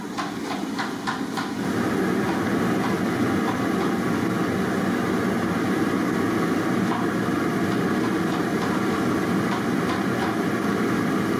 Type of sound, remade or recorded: recorded